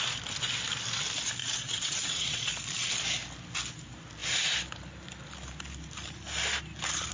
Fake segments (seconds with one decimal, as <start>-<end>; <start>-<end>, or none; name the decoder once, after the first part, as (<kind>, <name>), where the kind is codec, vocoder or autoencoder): 1.4-2.5 (vocoder, WaveNeXt)

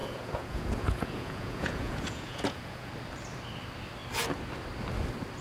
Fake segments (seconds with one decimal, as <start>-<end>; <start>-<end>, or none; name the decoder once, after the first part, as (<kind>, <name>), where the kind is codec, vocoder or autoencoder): 0.0-2.9 (vocoder, Vocos)

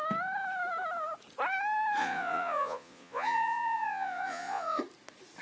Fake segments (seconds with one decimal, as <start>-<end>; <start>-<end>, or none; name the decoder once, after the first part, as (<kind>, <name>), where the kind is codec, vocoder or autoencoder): 2.0-4.8 (vocoder, Vocos)